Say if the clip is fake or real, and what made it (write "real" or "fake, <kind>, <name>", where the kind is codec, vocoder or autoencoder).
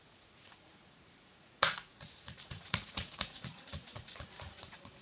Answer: fake, vocoder, Vocos